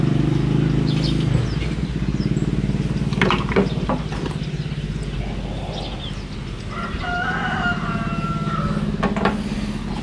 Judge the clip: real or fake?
real